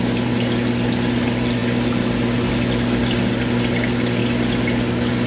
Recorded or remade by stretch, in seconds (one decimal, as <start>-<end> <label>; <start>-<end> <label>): 0.0-5.3 recorded